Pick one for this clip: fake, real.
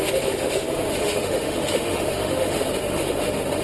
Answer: fake